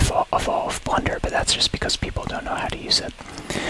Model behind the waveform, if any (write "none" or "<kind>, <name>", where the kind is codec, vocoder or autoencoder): none